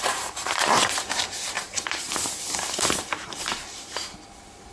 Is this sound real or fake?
fake